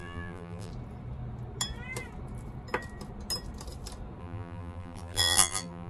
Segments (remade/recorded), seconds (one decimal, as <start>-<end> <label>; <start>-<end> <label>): 0.0-0.7 remade; 0.7-4.2 recorded; 4.2-5.9 remade